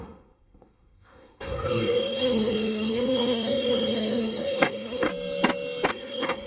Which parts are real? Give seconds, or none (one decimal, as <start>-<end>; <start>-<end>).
5.1-5.9